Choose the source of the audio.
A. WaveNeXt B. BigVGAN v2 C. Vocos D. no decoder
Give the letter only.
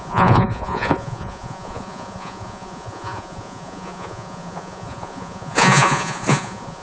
C